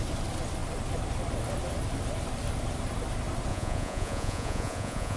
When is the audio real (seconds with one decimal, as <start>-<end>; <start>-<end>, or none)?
0.0-3.5